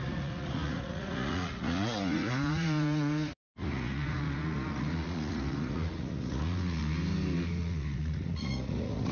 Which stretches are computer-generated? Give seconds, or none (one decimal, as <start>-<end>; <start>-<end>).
0.0-6.8; 7.6-9.1